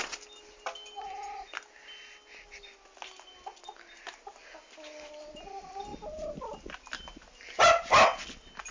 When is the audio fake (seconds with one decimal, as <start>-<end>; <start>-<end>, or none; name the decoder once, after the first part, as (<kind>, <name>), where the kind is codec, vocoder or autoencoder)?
none